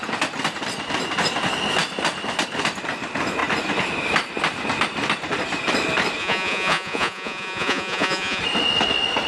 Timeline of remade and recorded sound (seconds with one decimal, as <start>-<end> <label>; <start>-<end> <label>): 0.0-6.2 recorded; 6.2-8.4 remade; 8.4-9.3 recorded